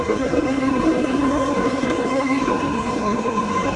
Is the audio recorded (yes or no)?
no